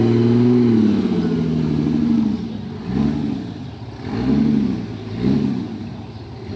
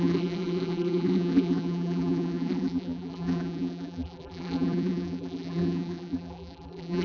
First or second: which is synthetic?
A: second